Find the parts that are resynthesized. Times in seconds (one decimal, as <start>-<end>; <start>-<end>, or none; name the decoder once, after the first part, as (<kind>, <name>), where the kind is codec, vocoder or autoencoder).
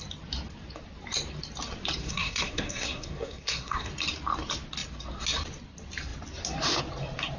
2.0-3.9 (codec, SNAC)